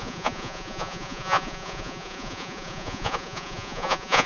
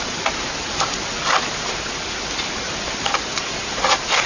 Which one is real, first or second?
second